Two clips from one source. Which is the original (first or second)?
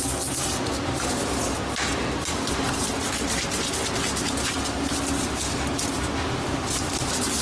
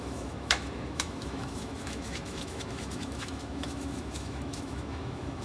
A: first